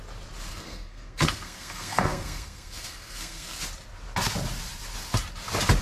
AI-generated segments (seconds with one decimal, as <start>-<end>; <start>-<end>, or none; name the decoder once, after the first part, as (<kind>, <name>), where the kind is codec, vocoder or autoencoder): 0.5-3.6 (codec, SNAC)